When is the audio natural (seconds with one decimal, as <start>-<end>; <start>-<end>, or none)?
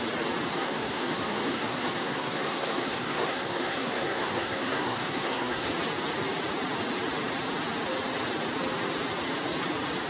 0.0-0.5; 5.7-10.1